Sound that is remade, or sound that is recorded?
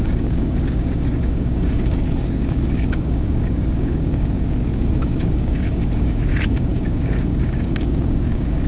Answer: remade